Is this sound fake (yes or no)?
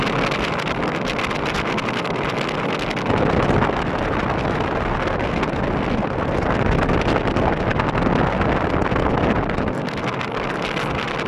no